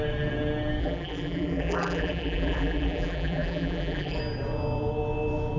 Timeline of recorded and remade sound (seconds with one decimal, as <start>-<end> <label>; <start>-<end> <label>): 0.0-0.8 recorded; 0.8-4.2 remade; 4.2-5.6 recorded